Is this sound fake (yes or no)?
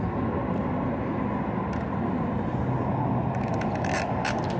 no